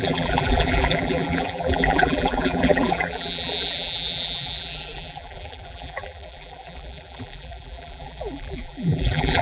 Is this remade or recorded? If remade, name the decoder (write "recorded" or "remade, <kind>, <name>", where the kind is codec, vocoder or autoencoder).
remade, vocoder, BigVGAN v2